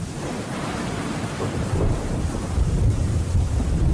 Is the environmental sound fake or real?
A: fake